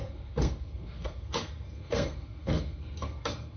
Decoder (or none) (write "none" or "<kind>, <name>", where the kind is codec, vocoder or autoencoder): codec, SNAC